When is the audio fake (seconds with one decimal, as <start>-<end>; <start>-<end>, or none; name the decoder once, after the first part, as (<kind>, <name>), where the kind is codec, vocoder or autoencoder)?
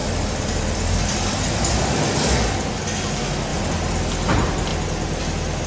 0.0-2.1 (vocoder, BigVGAN v2)